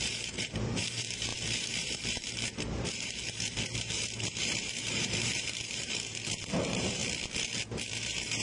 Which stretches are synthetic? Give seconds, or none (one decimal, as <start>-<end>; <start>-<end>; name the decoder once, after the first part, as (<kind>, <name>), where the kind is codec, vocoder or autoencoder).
0.0-7.0 (vocoder, BigVGAN v2); 7.9-8.4